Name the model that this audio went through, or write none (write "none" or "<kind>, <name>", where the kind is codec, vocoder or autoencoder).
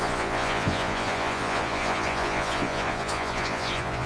vocoder, Vocos